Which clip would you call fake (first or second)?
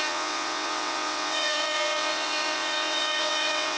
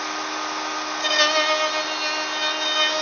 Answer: first